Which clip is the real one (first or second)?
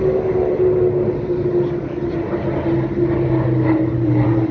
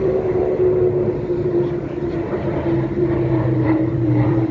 first